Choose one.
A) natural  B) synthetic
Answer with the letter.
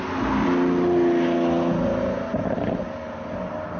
A